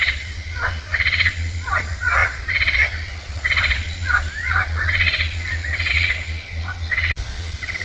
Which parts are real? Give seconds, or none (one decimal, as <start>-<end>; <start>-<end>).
none